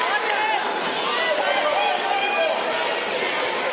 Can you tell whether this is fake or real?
real